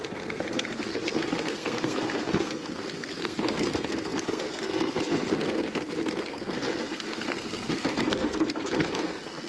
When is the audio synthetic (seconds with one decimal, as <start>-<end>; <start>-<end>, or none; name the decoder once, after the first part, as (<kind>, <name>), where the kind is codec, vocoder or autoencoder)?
0.0-9.5 (codec, SNAC)